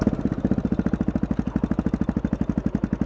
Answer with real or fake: real